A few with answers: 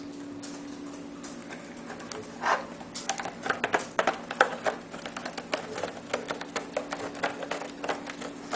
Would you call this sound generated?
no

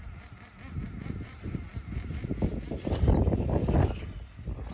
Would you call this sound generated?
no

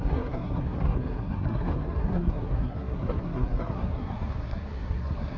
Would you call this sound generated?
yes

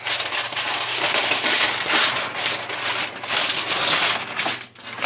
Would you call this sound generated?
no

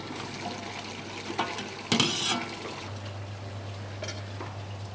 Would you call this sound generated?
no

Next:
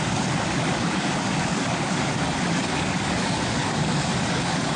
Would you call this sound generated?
yes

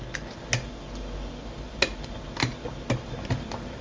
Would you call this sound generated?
no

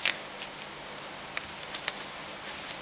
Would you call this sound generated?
no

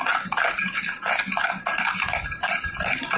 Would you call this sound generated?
no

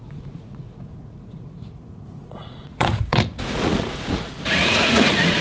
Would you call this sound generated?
yes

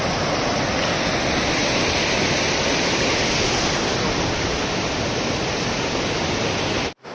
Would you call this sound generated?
no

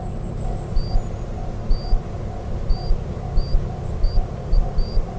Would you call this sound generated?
no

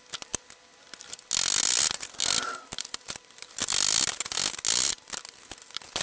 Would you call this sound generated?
no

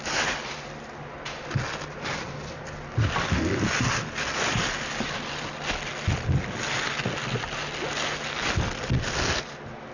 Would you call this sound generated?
no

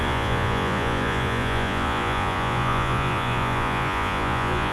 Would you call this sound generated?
yes